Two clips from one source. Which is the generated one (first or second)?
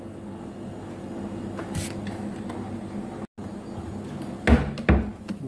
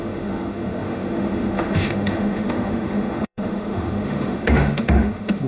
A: second